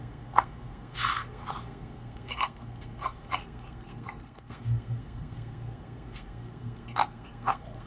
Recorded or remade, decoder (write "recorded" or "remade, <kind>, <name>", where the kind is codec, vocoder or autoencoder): remade, codec, SNAC